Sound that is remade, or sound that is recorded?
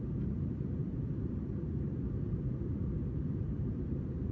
remade